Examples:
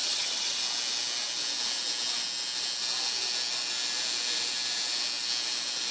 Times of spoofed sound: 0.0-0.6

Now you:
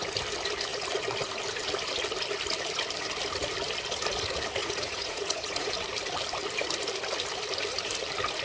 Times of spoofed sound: 4.6-5.7

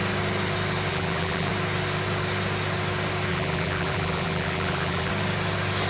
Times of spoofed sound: 0.9-1.5; 3.3-5.1